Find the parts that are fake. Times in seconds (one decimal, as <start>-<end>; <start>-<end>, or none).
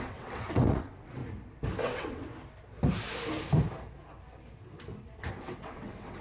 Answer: 0.0-1.2; 1.8-2.3; 5.3-6.2